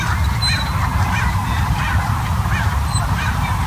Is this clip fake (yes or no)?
no